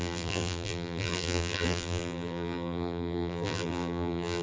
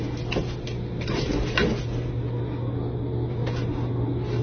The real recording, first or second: second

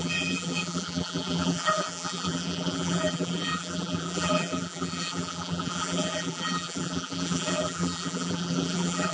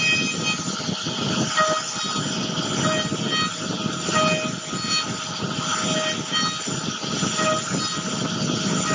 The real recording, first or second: second